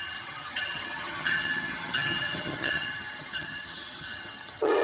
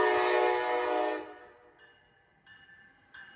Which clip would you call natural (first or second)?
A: second